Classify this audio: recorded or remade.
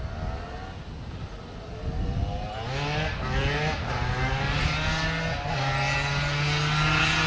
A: recorded